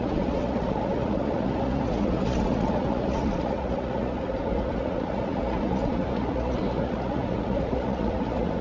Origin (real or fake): fake